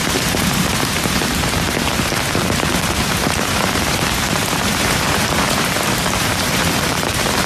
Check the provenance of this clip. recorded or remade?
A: remade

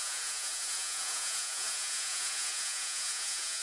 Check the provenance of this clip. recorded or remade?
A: remade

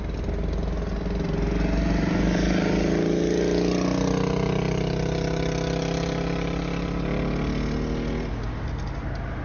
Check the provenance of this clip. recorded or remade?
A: recorded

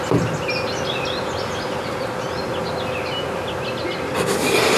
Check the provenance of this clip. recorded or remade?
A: recorded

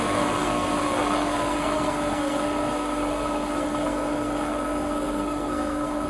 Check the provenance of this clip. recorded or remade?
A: remade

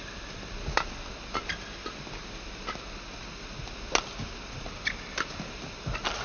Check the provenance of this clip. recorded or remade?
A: recorded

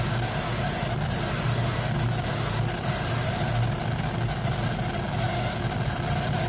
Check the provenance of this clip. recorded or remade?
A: recorded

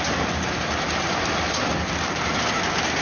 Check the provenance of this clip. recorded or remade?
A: recorded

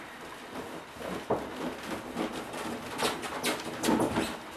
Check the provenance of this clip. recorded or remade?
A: recorded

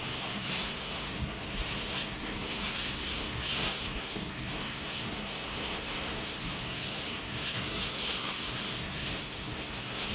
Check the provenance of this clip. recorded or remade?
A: remade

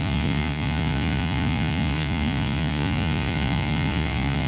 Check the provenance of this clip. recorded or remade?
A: remade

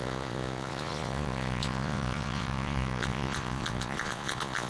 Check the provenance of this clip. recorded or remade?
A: remade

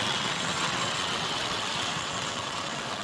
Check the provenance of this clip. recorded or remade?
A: remade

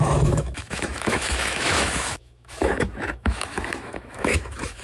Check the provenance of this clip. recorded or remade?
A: remade